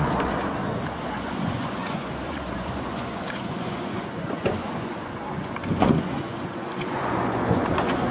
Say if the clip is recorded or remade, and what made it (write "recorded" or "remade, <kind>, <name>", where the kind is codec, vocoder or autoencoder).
remade, vocoder, Vocos